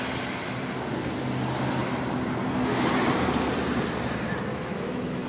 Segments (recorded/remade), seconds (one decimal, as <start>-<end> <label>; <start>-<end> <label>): 0.0-4.5 recorded; 4.5-5.3 remade